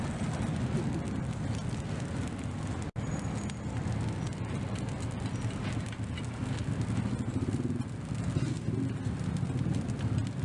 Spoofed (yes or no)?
no